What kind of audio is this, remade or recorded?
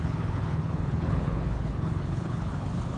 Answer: remade